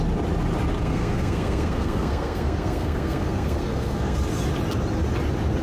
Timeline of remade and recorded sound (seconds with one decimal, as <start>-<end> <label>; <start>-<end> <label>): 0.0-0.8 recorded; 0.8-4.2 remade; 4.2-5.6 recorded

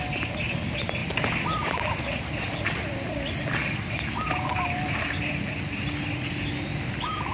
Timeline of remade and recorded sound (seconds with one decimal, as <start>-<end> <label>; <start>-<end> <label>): 0.0-7.3 recorded

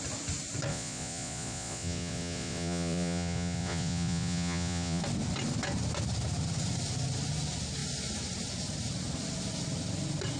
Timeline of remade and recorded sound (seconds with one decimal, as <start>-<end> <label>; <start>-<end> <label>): 0.0-0.7 recorded; 0.7-5.0 remade; 5.0-10.4 recorded